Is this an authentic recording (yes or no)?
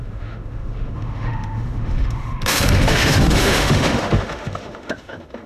no